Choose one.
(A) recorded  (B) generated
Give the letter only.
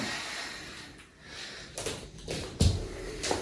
A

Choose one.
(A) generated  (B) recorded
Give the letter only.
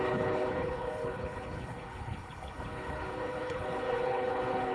A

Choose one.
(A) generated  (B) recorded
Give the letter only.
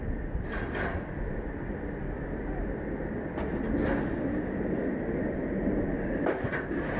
B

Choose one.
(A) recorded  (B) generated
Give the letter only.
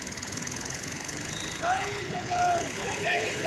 B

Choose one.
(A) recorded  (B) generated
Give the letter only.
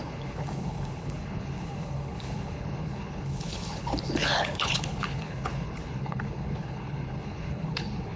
B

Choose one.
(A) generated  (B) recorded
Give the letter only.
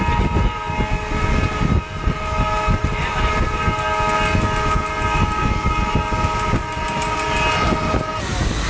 B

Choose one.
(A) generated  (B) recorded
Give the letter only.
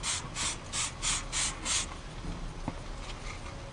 B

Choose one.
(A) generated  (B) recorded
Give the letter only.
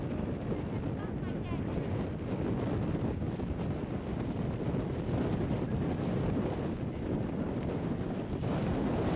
B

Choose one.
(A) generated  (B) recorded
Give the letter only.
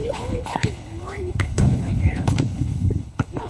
A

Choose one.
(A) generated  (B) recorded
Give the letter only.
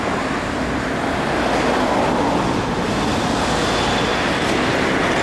B